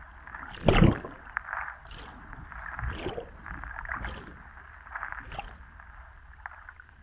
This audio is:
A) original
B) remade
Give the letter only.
A